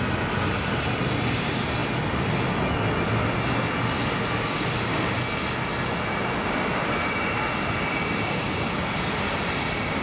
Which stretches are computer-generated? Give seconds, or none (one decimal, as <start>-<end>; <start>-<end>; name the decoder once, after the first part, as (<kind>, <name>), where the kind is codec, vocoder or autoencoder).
none